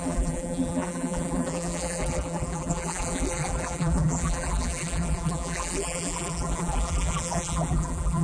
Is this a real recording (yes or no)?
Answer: no